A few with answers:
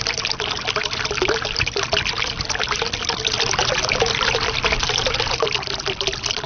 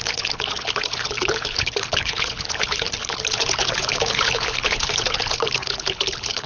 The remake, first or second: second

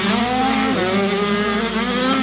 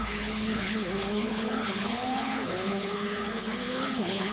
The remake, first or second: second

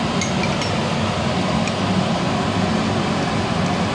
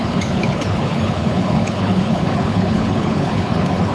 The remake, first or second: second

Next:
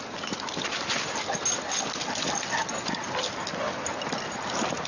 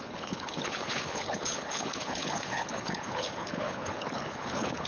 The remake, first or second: second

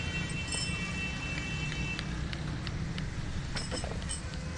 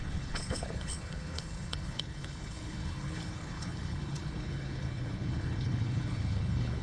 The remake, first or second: second